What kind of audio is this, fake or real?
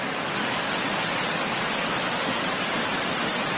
real